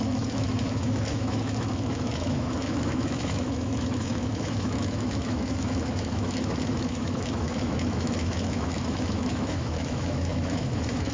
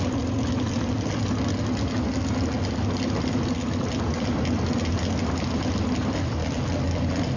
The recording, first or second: second